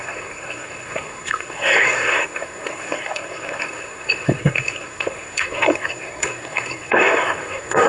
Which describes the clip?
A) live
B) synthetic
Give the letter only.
B